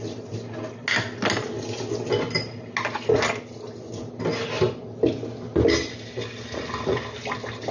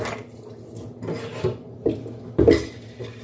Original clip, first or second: first